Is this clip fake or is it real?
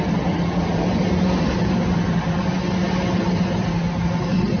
real